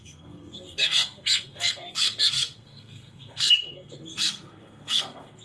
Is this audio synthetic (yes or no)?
yes